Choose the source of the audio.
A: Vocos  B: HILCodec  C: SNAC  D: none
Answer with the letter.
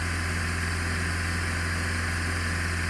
D